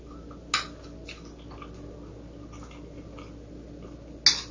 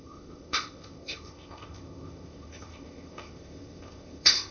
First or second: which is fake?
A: second